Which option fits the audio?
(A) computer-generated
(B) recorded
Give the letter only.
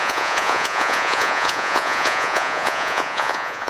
A